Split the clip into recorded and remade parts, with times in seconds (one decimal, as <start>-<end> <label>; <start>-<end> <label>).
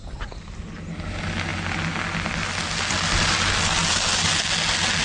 0.0-5.0 recorded